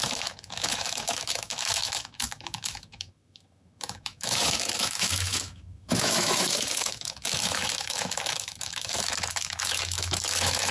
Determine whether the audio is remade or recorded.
remade